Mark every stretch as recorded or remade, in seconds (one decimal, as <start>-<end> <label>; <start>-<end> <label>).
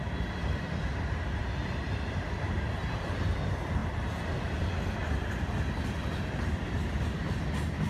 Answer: 0.0-7.9 recorded